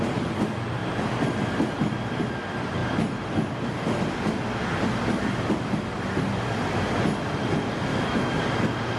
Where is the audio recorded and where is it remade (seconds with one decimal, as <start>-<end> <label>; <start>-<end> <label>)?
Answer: 0.0-7.9 recorded; 7.9-8.4 remade; 8.4-9.0 recorded